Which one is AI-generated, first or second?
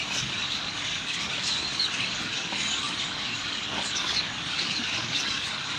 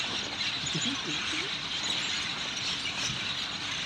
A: first